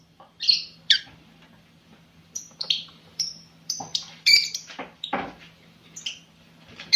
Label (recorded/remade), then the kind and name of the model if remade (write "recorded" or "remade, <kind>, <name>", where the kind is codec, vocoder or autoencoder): remade, vocoder, BigVGAN v2